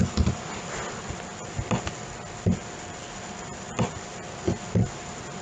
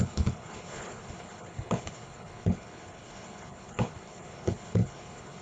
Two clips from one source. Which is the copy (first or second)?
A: second